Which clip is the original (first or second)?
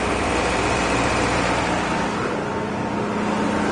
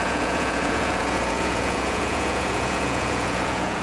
first